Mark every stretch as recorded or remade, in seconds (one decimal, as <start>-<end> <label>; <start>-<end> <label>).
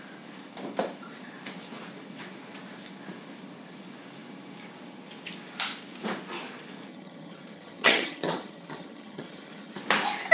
0.0-6.9 recorded; 6.9-9.8 remade; 9.8-10.3 recorded